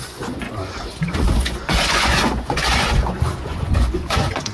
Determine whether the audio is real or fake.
fake